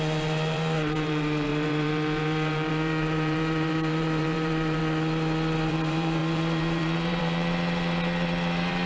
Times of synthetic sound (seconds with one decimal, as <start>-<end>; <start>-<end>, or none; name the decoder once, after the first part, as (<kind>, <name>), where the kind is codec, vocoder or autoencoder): 0.0-4.8 (vocoder, BigVGAN v2); 5.7-8.9